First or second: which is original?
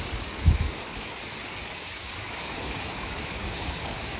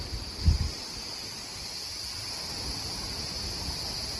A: second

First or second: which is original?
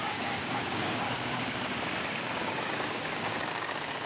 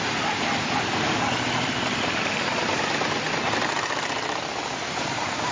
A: second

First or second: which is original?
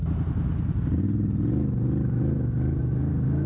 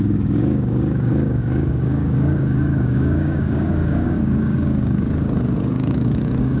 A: first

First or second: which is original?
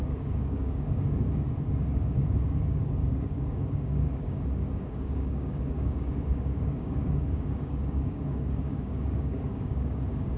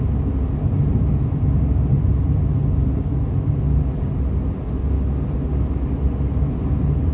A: second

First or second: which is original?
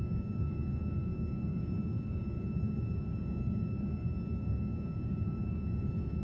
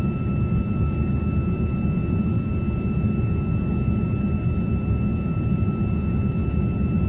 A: second